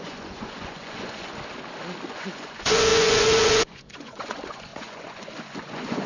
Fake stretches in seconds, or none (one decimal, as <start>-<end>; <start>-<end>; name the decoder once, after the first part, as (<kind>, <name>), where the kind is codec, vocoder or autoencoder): 0.0-1.3 (vocoder, Vocos); 2.1-6.1

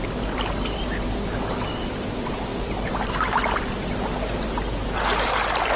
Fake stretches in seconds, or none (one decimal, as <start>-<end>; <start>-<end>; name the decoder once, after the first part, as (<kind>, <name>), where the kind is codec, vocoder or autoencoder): none

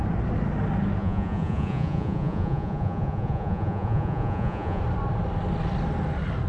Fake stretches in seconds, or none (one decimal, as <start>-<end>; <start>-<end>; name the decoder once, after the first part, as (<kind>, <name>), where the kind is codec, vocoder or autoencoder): 1.0-4.8 (vocoder, Vocos)